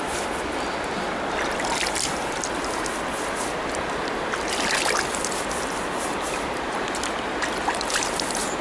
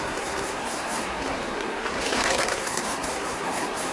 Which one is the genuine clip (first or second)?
first